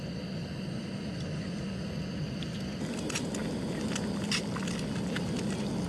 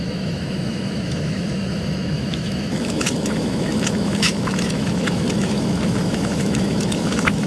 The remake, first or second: second